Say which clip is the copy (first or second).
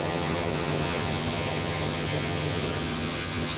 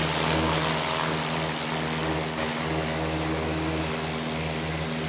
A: first